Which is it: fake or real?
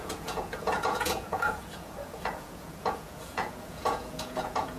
fake